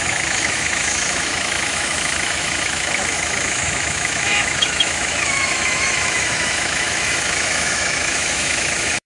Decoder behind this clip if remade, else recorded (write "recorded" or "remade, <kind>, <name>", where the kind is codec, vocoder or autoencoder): remade, autoencoder, DAC-VAE